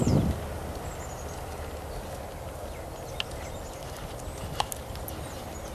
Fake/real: real